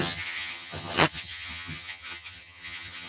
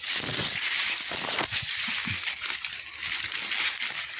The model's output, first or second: first